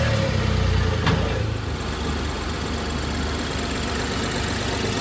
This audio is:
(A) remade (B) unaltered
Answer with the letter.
B